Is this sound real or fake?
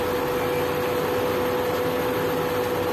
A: real